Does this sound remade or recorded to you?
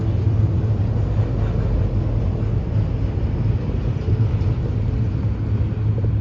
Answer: recorded